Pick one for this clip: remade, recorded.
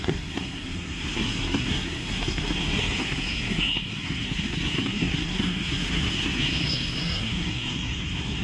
remade